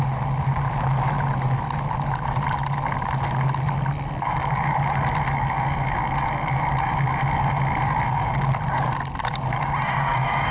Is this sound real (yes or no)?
yes